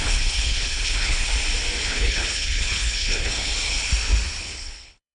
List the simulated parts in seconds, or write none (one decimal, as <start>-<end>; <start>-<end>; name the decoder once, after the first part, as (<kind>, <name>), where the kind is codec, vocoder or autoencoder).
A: 0.0-1.3 (codec, HILCodec); 1.8-3.5; 4.4-5.1